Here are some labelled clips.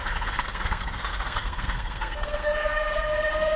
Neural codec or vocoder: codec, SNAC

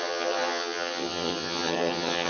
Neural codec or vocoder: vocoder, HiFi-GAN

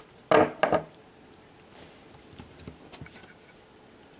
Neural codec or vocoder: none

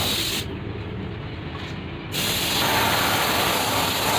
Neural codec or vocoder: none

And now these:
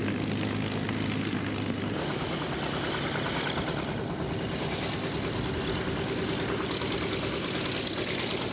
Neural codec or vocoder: none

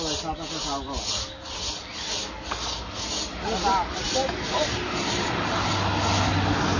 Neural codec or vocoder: none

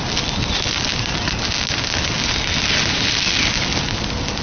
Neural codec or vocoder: none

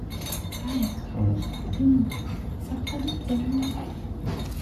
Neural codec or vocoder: none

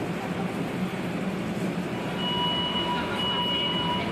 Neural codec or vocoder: none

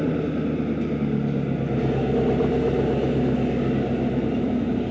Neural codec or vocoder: none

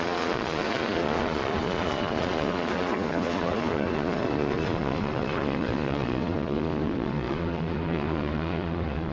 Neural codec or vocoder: vocoder, Vocos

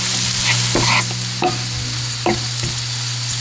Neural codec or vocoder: none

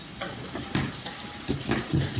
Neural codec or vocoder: none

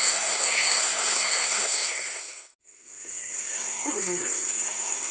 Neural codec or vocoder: codec, SNAC